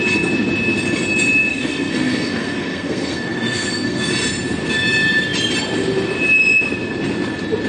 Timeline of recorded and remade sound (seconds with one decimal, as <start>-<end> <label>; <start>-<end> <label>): 0.0-1.5 recorded; 1.5-4.1 remade; 4.1-7.7 recorded